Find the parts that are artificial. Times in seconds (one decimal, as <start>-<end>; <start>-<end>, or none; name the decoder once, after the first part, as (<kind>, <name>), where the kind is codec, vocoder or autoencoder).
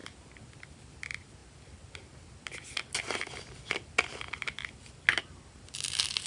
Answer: none